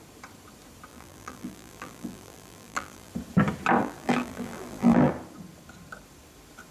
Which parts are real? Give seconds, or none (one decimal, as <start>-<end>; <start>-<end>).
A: 0.0-0.9; 3.1-3.8; 5.1-6.7